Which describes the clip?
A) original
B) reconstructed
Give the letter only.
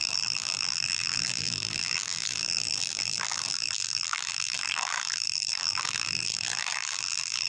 B